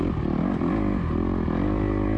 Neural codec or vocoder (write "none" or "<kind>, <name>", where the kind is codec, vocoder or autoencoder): none